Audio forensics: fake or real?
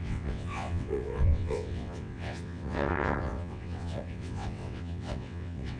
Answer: fake